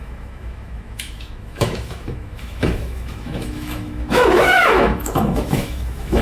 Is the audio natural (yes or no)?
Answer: no